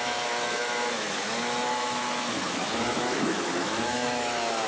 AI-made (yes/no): yes